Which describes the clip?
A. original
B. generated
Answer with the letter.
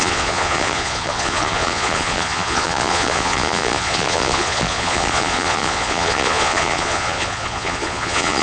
B